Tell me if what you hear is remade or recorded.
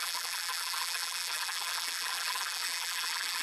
remade